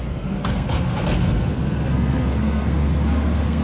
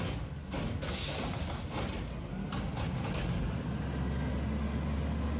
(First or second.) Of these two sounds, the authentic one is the second